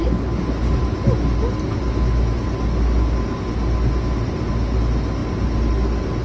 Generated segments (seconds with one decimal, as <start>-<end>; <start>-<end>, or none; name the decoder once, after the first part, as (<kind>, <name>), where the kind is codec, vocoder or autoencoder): none